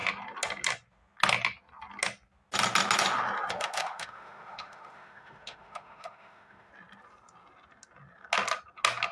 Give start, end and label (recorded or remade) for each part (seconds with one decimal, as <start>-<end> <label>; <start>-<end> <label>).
0.0-3.5 recorded; 3.5-6.7 remade; 6.7-9.1 recorded